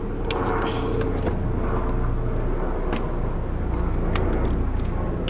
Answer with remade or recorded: recorded